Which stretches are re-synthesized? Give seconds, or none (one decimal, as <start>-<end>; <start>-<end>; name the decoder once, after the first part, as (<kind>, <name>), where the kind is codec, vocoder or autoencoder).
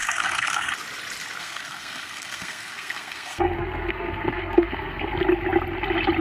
0.0-0.7 (codec, SNAC); 1.4-5.1